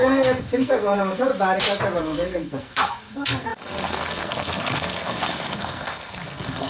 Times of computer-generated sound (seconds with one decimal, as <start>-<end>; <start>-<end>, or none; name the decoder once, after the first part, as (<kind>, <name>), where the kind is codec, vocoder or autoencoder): 0.0-1.3 (codec, SNAC); 2.0-6.7